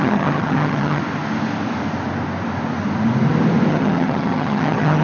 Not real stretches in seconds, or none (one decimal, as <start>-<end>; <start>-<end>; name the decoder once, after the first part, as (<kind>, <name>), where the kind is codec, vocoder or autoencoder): 0.0-1.0 (vocoder, HiFi-GAN); 3.7-5.0